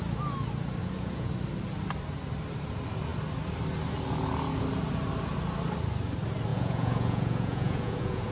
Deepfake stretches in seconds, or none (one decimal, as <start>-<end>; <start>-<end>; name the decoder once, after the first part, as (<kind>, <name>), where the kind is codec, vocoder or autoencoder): 0.8-1.3 (vocoder, Vocos); 6.5-8.3